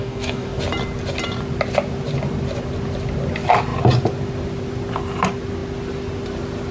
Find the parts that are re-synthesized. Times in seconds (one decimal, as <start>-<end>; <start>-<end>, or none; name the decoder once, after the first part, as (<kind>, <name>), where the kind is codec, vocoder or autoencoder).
0.0-0.6 (codec, DAC)